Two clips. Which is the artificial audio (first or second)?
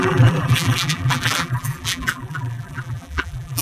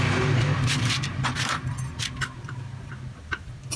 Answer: first